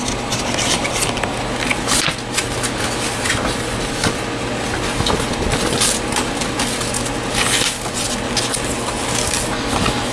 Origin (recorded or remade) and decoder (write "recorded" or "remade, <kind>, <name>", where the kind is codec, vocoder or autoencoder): recorded